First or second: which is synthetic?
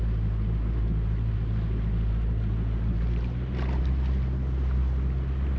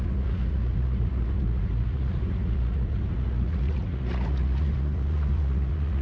second